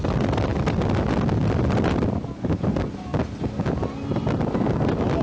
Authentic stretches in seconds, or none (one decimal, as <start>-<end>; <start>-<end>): 0.0-5.2